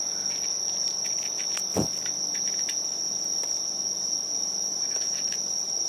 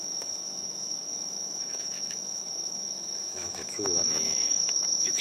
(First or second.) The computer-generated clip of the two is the second